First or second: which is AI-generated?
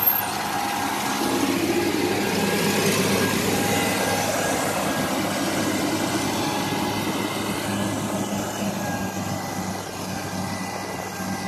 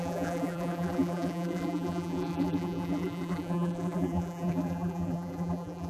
second